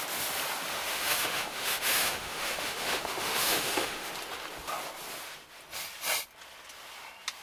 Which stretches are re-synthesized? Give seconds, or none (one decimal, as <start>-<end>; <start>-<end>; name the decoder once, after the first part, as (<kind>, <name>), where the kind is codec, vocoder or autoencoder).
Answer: 0.7-4.1 (autoencoder, DAC-VAE)